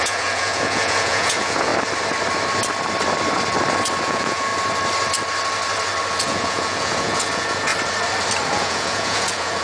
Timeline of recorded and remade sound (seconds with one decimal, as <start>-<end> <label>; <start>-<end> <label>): 0.0-1.7 remade; 1.7-4.0 recorded; 4.0-4.5 remade; 4.5-6.1 recorded; 6.1-7.7 remade; 7.7-8.5 recorded; 8.5-9.6 remade